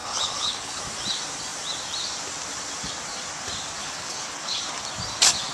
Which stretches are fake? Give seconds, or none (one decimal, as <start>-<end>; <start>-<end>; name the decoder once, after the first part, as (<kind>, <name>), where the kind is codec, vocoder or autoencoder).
0.0-0.8 (codec, HILCodec); 3.8-4.6

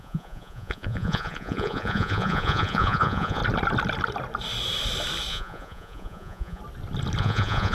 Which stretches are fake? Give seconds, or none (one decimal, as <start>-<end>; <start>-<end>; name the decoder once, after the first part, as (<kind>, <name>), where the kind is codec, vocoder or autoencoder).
0.0-3.4 (vocoder, Vocos); 5.3-6.6; 7.2-7.7

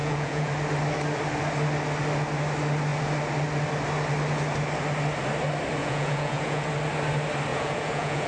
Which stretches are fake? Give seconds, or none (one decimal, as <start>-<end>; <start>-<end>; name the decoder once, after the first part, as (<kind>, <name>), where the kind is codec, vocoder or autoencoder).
0.0-0.5 (vocoder, Vocos); 5.8-6.6; 7.5-8.3